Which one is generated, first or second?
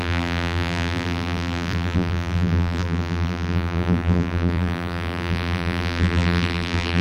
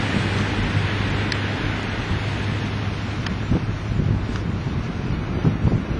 first